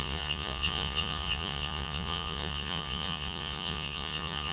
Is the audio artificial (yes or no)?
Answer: yes